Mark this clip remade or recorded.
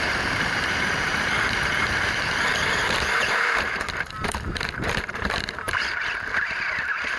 remade